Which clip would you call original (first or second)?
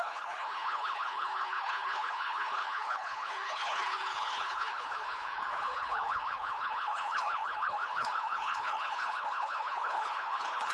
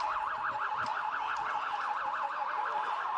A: second